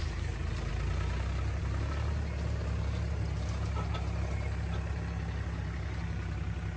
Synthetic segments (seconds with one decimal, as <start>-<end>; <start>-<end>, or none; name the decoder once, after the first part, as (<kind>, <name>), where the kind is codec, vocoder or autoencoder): none